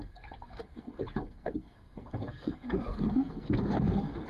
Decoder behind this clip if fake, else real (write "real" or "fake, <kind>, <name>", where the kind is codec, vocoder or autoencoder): fake, codec, SNAC